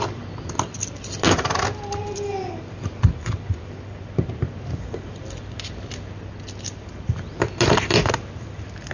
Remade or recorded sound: recorded